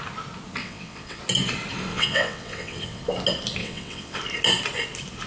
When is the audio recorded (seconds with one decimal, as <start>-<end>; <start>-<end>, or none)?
0.0-0.6; 1.2-1.9; 3.0-3.6; 4.2-5.3